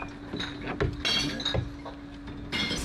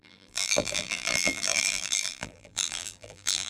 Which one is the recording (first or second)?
first